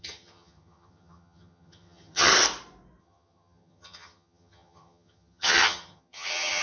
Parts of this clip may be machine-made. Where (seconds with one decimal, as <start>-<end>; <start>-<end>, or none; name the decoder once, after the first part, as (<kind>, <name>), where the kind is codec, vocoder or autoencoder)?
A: 0.0-2.3 (vocoder, HiFi-GAN); 3.0-6.6